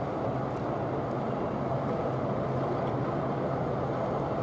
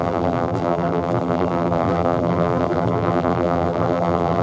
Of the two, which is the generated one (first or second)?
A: second